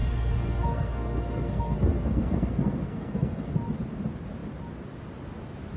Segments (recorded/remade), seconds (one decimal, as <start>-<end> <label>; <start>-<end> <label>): 0.0-3.5 remade; 3.5-5.8 recorded